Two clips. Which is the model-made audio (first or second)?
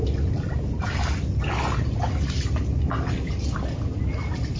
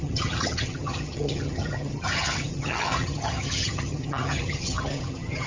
second